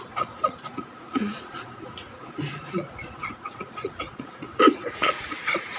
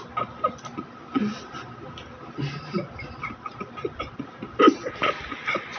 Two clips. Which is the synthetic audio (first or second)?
first